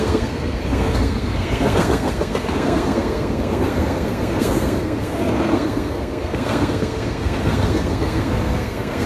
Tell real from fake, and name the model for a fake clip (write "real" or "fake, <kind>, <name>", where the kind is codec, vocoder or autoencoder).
fake, codec, SNAC